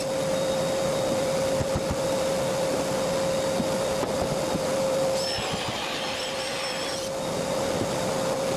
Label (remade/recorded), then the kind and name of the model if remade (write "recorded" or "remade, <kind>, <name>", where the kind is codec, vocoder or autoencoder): recorded